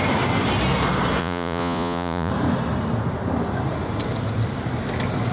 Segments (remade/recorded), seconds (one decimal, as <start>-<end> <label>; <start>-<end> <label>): 0.0-1.2 recorded; 1.2-2.3 remade; 2.3-5.3 recorded